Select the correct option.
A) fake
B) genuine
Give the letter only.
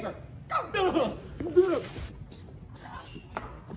B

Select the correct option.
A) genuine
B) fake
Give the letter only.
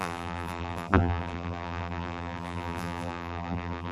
B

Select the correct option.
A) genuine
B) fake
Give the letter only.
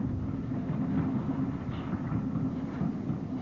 A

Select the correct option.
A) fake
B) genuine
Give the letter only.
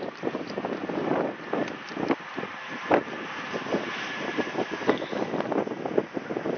B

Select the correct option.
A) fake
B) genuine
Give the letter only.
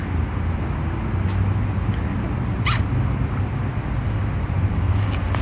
B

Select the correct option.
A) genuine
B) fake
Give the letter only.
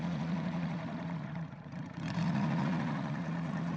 B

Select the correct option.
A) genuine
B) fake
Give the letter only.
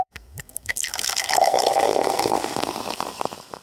B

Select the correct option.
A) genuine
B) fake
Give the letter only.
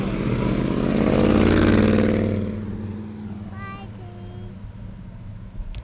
A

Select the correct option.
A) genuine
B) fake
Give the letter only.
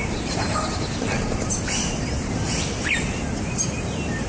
A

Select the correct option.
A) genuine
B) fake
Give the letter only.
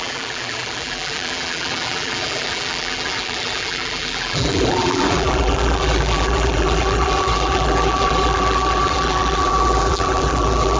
B